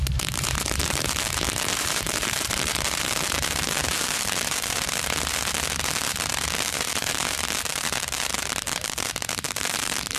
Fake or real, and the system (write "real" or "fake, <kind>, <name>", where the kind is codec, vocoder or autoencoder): fake, vocoder, BigVGAN v2